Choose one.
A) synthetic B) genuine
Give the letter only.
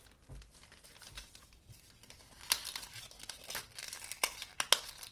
B